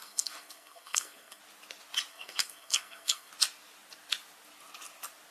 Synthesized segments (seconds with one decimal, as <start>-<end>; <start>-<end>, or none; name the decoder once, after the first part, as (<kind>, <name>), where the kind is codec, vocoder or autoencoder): 0.0-1.4 (codec, SNAC); 2.1-3.3